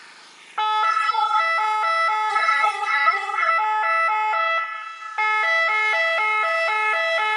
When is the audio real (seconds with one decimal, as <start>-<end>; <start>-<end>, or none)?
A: 0.0-0.9; 1.4-2.3; 3.5-7.4